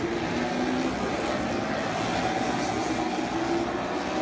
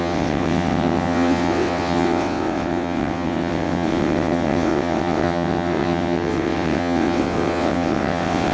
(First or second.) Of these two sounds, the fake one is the second